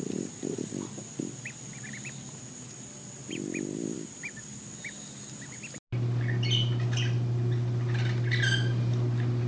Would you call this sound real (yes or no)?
yes